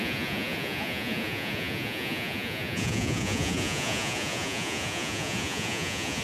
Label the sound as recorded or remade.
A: remade